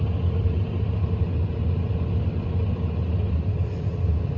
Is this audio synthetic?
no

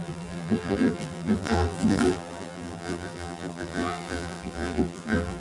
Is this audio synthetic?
yes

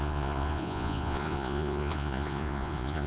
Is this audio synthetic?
yes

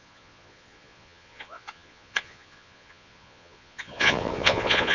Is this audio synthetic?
yes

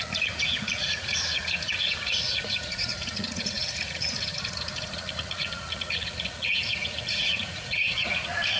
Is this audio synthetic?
yes